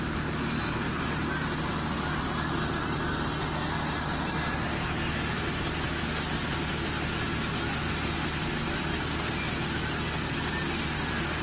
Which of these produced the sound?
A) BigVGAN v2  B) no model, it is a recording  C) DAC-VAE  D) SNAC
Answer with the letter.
B